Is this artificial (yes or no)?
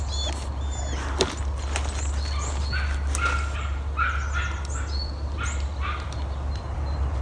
no